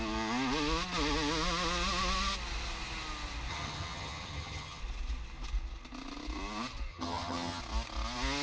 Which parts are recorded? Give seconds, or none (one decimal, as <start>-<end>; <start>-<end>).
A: 0.0-3.5; 4.8-6.9; 7.6-8.4